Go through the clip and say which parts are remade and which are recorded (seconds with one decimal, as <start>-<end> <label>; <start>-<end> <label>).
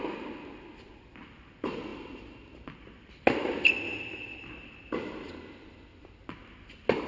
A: 0.0-7.1 recorded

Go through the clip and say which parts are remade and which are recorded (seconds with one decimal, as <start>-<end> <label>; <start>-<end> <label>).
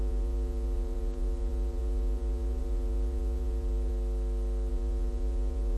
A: 0.0-3.9 remade; 3.9-4.7 recorded; 4.7-5.8 remade